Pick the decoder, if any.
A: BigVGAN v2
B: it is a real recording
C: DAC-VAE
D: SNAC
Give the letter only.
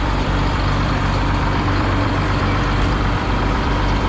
A